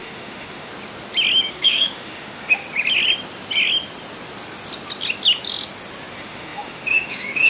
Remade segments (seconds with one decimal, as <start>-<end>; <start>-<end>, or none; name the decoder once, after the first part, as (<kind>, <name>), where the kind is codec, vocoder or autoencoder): 0.0-0.7 (autoencoder, DAC-VAE); 1.5-2.6; 6.1-7.5